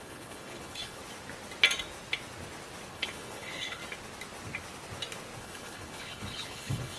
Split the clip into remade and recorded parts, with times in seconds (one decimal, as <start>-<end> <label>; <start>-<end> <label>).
0.0-1.0 remade; 1.0-2.9 recorded; 2.9-3.8 remade; 3.8-5.4 recorded; 5.4-7.0 remade